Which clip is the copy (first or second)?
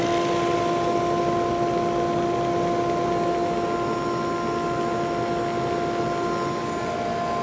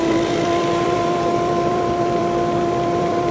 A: second